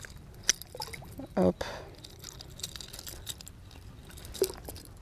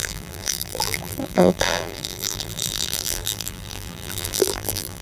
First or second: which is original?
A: first